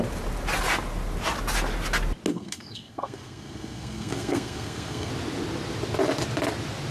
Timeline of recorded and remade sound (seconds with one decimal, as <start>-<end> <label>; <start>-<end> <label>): 0.0-2.3 recorded; 2.3-5.1 remade; 5.1-6.9 recorded